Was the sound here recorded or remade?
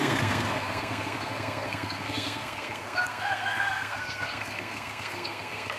remade